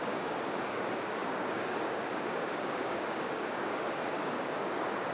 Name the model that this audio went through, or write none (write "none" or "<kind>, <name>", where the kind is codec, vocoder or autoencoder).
codec, DAC